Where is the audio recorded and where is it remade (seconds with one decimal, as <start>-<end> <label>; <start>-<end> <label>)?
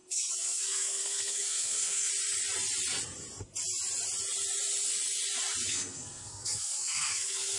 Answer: 0.0-2.1 remade; 2.1-5.7 recorded; 5.7-7.6 remade